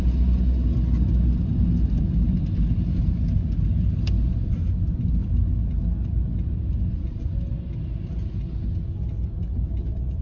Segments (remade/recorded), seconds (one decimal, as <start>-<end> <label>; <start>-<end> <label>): 0.0-10.2 recorded